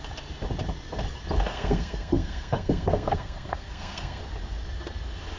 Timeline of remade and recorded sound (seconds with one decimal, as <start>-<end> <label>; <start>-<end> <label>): 0.0-1.5 recorded; 1.5-4.2 remade; 4.2-5.4 recorded